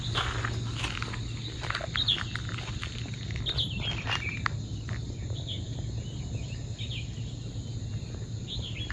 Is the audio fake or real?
real